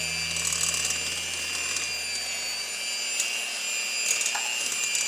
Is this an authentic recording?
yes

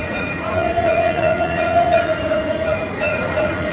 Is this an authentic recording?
no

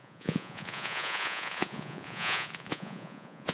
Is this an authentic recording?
no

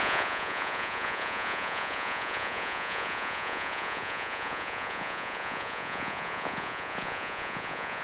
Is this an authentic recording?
no